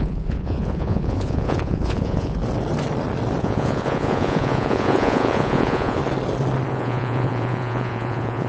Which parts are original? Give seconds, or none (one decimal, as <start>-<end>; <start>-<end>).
2.4-3.4; 6.0-6.7